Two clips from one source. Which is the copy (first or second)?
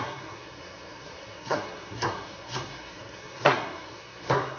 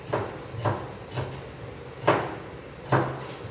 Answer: first